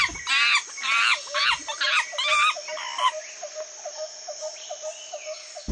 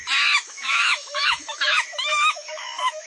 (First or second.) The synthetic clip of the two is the second